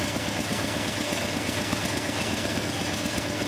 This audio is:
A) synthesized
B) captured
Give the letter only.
A